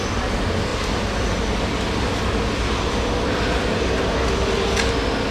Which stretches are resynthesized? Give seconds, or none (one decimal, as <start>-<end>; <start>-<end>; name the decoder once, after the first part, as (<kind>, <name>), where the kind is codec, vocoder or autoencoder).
none

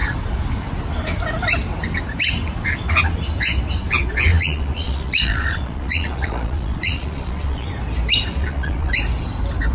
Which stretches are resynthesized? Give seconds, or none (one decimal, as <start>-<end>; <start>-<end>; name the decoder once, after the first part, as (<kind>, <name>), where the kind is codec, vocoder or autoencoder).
4.3-7.7 (vocoder, Vocos); 8.4-8.9

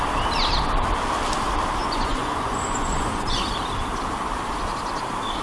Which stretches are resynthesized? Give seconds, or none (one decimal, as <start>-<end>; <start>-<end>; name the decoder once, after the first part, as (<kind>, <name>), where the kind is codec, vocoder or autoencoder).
1.8-3.4 (vocoder, Vocos)

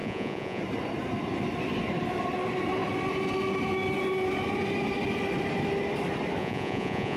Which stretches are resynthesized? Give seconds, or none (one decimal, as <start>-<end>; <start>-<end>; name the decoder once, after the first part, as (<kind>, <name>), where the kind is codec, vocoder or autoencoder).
0.0-0.6 (vocoder, Vocos); 6.4-7.2

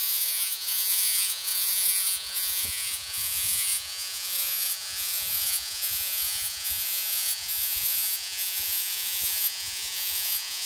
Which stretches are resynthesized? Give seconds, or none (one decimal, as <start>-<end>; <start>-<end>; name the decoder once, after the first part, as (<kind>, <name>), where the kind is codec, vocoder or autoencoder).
0.0-10.7 (vocoder, Vocos)

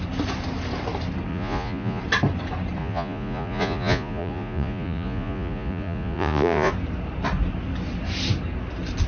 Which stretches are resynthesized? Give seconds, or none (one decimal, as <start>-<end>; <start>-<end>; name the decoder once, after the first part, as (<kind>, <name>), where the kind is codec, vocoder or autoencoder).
1.3-2.0 (vocoder, Vocos); 2.8-6.7

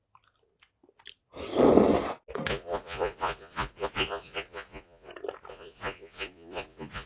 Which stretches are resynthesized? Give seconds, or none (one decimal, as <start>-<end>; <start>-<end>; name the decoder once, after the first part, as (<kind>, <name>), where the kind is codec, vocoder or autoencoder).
2.5-5.1 (vocoder, Vocos); 5.5-7.1

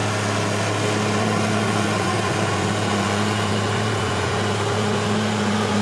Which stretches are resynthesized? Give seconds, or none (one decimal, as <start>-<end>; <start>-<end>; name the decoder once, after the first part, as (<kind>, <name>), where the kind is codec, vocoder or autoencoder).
1.2-5.8 (vocoder, Vocos)